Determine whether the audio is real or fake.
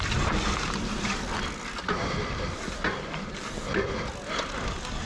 real